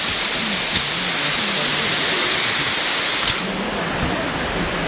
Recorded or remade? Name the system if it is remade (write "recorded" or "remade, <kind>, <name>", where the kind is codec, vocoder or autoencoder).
recorded